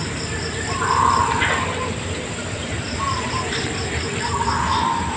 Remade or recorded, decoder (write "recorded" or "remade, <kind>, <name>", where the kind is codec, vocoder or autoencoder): recorded